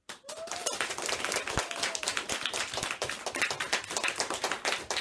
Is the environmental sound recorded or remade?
recorded